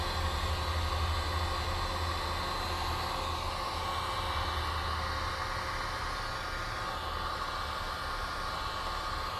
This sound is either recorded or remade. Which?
recorded